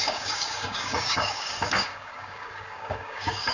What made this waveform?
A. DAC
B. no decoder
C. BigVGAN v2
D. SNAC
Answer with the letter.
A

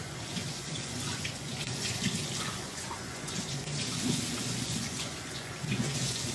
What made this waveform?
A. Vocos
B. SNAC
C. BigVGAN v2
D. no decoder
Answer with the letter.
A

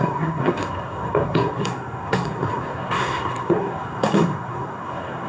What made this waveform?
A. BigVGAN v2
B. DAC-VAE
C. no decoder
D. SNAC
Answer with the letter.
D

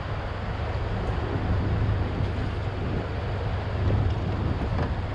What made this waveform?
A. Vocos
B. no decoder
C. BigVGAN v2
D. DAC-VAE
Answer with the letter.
B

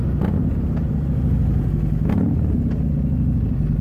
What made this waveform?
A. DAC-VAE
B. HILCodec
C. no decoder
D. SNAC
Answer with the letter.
C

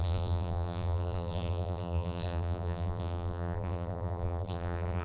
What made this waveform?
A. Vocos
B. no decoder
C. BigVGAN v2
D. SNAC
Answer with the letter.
C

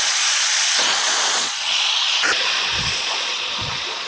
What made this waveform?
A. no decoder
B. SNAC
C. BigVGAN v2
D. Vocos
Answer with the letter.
D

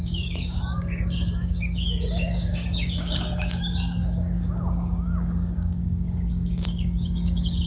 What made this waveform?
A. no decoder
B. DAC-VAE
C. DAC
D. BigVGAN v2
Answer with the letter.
C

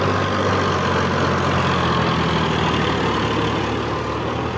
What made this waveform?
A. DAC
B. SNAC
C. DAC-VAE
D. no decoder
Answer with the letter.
D